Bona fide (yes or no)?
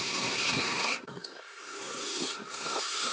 no